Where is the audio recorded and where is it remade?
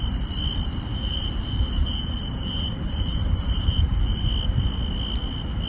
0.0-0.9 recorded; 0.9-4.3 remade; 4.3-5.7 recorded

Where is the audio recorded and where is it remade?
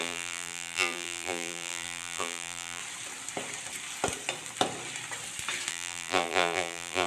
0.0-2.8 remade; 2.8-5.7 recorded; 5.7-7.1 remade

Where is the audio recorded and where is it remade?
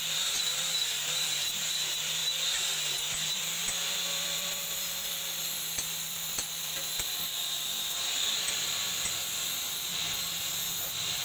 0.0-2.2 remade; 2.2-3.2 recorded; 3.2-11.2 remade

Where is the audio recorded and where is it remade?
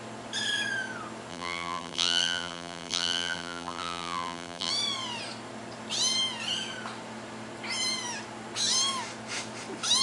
0.0-1.3 recorded; 1.3-4.7 remade; 4.7-10.0 recorded